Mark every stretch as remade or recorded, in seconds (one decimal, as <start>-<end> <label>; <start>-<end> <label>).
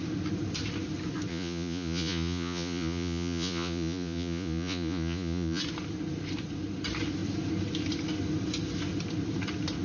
0.0-1.3 recorded; 1.3-5.6 remade; 5.6-9.8 recorded